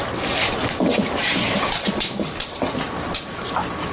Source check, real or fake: real